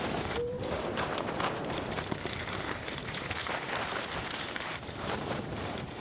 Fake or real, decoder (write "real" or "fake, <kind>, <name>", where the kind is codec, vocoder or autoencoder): fake, vocoder, BigVGAN v2